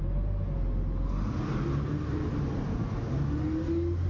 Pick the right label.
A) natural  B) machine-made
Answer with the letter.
A